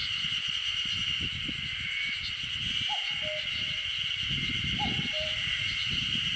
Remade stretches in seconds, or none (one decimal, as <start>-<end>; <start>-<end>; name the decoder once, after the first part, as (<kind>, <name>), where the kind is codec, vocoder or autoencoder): none